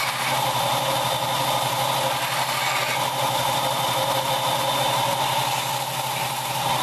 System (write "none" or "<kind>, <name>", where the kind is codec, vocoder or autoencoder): none